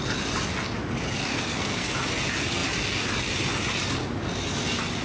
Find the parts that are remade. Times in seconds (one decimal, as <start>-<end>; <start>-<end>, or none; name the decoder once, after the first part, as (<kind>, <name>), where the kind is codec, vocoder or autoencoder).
1.3-1.9 (codec, SNAC)